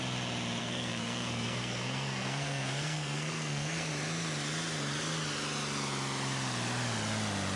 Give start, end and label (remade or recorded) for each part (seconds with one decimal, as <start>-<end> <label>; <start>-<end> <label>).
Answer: 0.0-0.6 recorded; 0.6-3.9 remade; 3.9-7.6 recorded